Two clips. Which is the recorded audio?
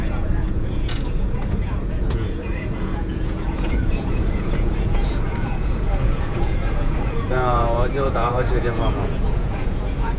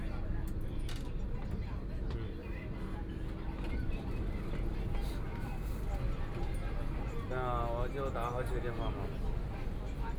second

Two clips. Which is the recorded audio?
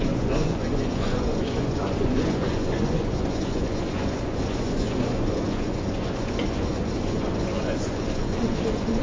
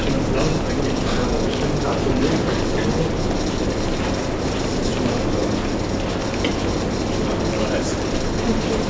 second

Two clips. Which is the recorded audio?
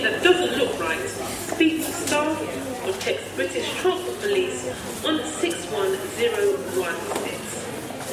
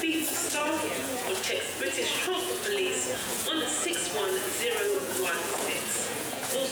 first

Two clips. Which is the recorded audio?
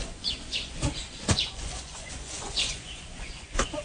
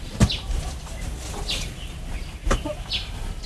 second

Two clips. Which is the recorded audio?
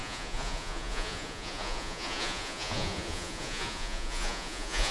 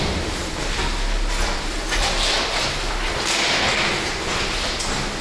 second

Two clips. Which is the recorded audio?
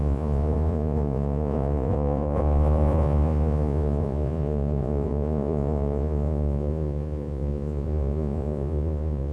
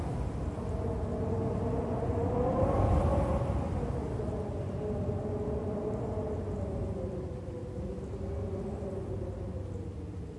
second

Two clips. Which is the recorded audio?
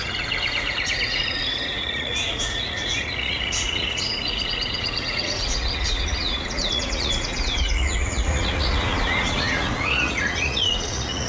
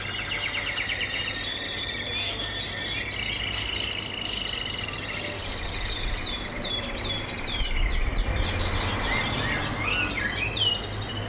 second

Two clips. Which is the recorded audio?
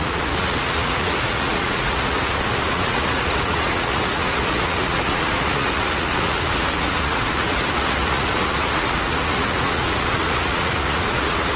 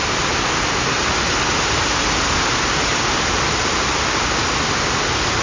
second